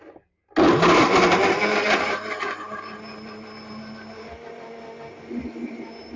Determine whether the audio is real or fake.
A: real